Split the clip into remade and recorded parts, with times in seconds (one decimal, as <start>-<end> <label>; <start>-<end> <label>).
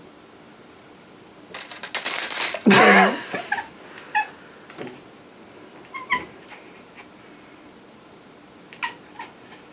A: 0.0-9.7 recorded